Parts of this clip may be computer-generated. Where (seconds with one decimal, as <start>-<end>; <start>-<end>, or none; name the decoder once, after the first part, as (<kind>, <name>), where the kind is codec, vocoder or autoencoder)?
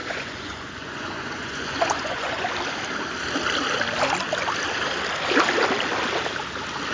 0.0-2.5 (vocoder, Vocos)